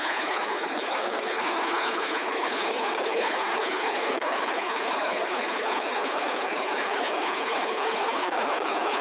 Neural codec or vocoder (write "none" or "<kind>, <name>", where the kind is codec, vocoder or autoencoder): codec, HILCodec